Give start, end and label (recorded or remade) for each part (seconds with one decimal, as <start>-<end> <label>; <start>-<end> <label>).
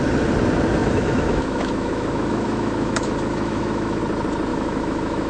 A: 0.0-0.8 recorded; 0.8-4.0 remade; 4.0-4.5 recorded; 4.5-5.3 remade